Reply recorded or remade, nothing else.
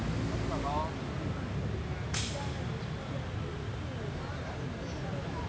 recorded